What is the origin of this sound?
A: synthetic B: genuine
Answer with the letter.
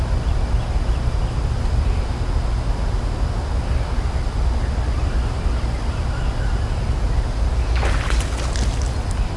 B